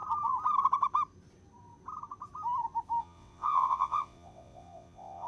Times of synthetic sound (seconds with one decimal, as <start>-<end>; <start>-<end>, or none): 3.0-5.3